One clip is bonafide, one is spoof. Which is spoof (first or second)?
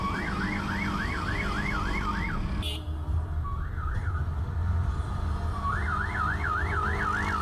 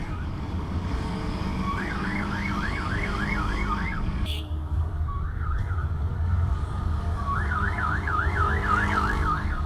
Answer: second